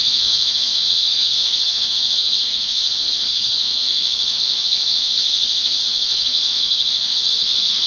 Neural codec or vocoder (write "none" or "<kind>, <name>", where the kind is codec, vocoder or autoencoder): codec, SNAC